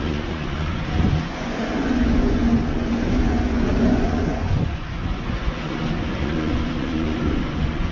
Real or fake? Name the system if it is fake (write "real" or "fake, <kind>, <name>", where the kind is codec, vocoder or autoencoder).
fake, vocoder, Vocos